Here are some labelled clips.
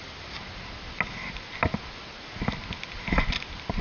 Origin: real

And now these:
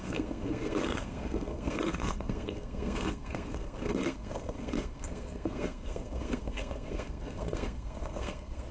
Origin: fake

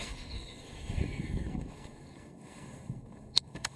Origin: fake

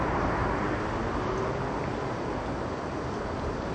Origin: real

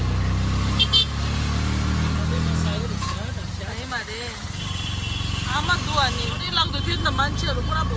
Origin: real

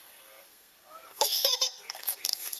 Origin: fake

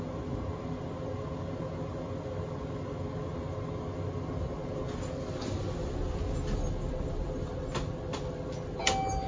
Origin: real